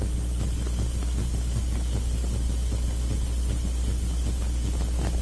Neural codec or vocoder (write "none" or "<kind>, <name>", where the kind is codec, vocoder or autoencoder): none